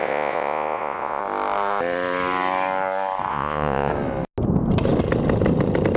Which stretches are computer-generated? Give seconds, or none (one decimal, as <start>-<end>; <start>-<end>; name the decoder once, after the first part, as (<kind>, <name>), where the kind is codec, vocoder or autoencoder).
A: 0.0-1.2 (vocoder, Vocos); 3.3-3.9